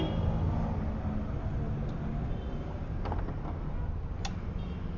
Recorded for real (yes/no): yes